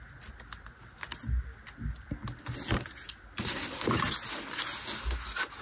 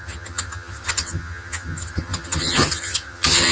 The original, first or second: first